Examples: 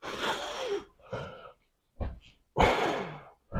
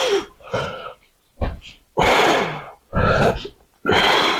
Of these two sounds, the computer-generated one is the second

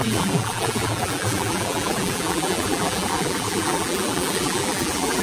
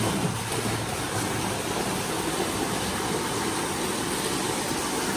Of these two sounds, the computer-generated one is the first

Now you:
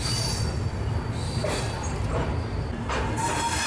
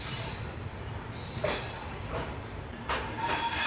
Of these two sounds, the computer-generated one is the second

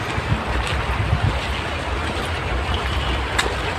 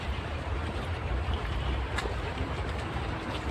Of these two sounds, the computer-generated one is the second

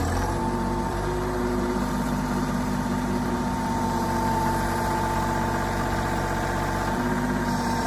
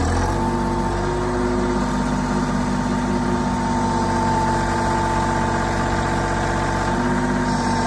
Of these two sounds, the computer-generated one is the first